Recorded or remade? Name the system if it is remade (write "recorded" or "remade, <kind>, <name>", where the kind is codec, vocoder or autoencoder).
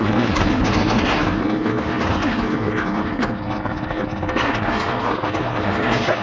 remade, codec, SNAC